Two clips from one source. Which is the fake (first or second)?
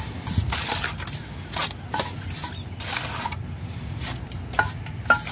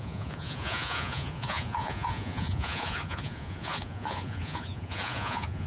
second